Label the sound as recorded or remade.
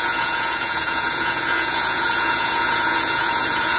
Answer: remade